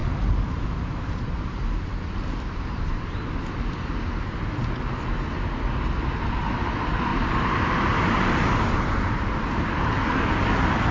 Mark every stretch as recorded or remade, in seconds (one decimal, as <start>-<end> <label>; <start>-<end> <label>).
0.0-3.3 remade; 3.3-7.1 recorded; 7.1-9.2 remade; 9.2-10.9 recorded